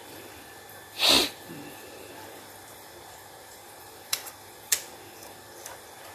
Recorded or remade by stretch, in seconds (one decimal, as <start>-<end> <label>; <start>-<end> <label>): 0.0-1.2 recorded; 1.2-4.9 remade; 4.9-6.1 recorded

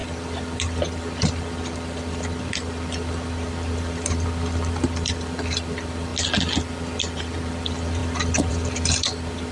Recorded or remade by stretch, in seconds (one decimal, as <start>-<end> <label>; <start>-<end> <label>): 0.0-6.1 remade; 6.1-7.2 recorded; 7.2-9.5 remade

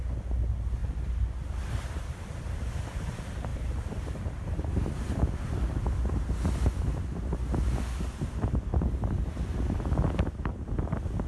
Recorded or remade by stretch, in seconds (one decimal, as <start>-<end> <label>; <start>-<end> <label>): 0.0-0.8 recorded; 0.8-2.4 remade; 2.4-3.5 recorded; 3.5-8.5 remade; 8.5-11.3 recorded

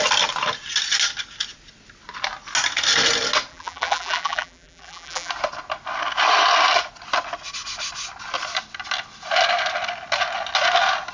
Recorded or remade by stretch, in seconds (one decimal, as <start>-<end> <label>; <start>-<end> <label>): 0.0-3.5 recorded; 3.5-5.3 remade; 5.3-11.1 recorded

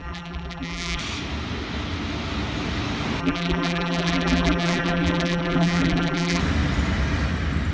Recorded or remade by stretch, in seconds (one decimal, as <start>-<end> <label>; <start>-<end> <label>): 0.0-1.0 remade; 1.0-3.2 recorded; 3.2-6.4 remade; 6.4-7.7 recorded

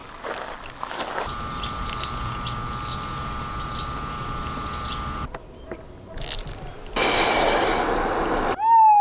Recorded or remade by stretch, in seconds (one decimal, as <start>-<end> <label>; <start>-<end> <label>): 0.0-9.0 recorded